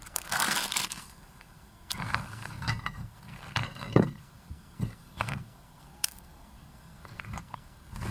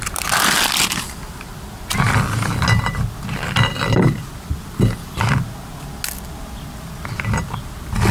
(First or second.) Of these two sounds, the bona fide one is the second